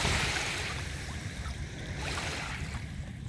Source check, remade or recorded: remade